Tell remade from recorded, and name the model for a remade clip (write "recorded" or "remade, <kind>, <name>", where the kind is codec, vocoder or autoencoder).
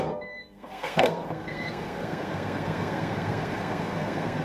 remade, codec, SNAC